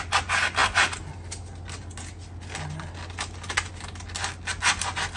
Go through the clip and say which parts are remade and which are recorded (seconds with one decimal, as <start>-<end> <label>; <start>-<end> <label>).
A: 0.0-5.2 recorded